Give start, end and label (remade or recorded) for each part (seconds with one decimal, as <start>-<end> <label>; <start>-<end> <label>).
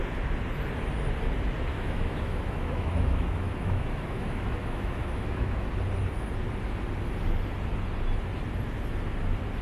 0.0-1.7 recorded; 1.7-5.7 remade; 5.7-9.6 recorded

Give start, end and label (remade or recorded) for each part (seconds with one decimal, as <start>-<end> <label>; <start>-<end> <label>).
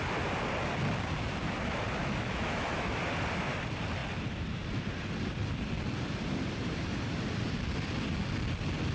0.0-2.0 recorded; 2.0-3.0 remade; 3.0-8.9 recorded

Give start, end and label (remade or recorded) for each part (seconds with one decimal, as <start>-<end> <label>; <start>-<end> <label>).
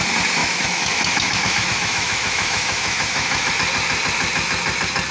0.0-0.4 recorded; 0.4-3.5 remade; 3.5-5.1 recorded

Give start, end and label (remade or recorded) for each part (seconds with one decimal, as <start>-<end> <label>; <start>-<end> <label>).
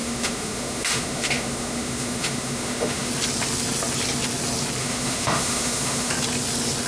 0.0-3.1 remade; 3.1-4.8 recorded; 4.8-6.1 remade; 6.1-6.9 recorded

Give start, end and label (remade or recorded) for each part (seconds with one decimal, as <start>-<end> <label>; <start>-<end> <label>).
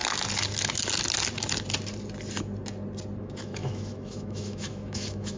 0.0-3.2 recorded; 3.2-5.4 remade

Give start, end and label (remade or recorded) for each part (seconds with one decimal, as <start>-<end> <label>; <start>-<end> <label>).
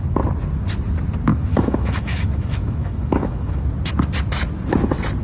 0.0-1.3 recorded; 1.3-3.6 remade; 3.6-5.2 recorded